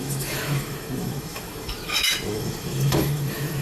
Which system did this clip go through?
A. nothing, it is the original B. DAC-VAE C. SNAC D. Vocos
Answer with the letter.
B